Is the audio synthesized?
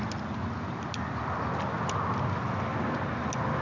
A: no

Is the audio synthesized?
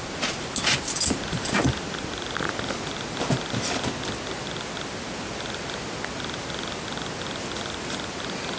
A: no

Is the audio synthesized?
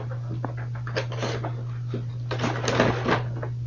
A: no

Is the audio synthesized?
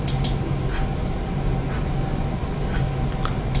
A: no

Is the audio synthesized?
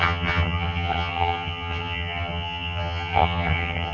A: yes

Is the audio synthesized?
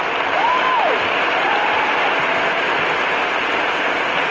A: no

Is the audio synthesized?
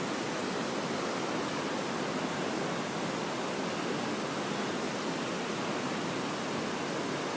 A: no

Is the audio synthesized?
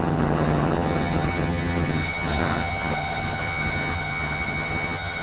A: yes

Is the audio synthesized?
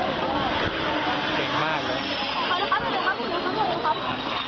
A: no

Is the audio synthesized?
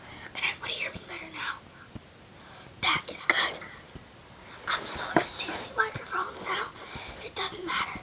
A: no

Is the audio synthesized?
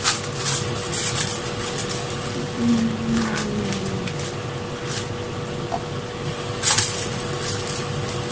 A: no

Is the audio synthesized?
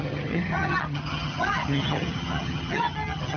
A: yes